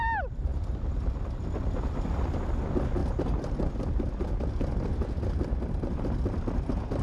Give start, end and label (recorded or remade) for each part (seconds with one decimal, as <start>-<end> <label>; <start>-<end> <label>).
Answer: 0.0-7.0 recorded